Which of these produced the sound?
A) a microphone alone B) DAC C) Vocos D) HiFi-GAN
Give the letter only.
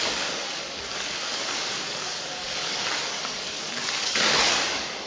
B